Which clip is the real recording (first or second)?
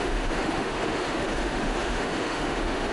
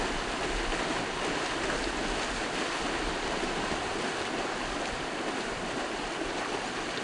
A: second